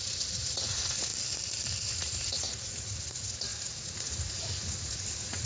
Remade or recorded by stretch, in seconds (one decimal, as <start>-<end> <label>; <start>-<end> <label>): 0.0-1.1 remade; 1.1-1.8 recorded; 1.8-5.5 remade